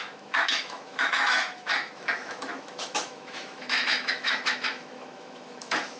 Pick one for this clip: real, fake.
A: fake